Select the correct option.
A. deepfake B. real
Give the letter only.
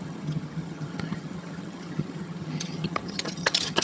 A